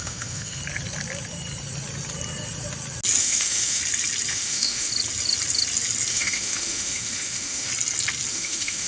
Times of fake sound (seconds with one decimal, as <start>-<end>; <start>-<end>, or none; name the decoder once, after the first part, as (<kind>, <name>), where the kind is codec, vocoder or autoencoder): 0.0-0.6 (autoencoder, DAC-VAE); 3.2-3.8; 4.3-4.9; 6.1-7.7; 8.3-8.9